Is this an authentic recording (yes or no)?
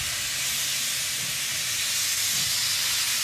yes